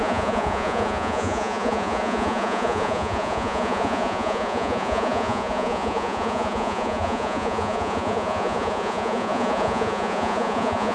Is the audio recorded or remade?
remade